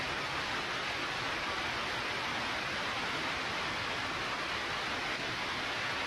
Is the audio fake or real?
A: real